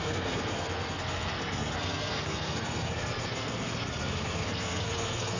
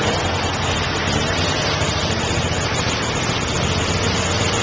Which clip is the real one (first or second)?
second